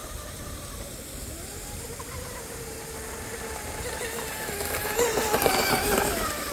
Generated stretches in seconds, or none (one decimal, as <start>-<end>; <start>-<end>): 0.0-2.9; 4.8-6.1